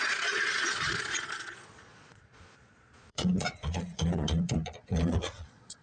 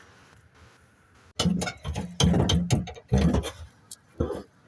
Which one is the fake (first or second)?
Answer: first